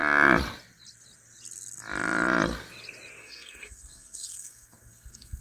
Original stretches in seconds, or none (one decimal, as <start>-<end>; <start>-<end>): 0.0-3.2